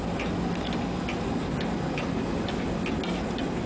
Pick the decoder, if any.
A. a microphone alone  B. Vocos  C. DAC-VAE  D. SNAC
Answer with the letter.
A